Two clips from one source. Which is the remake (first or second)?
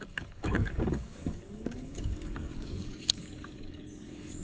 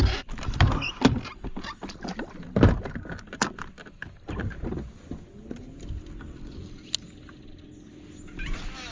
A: first